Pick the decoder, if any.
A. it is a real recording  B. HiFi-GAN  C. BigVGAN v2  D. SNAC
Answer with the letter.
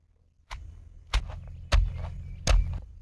A